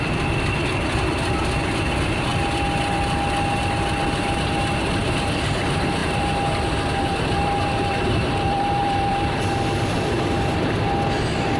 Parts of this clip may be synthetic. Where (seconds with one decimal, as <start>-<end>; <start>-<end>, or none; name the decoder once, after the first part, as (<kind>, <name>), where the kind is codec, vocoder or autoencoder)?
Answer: 6.0-9.3 (vocoder, BigVGAN v2)